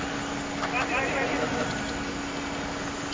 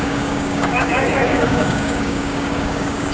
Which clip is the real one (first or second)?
first